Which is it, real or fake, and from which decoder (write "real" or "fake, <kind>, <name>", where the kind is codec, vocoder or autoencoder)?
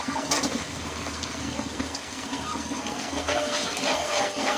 fake, codec, SNAC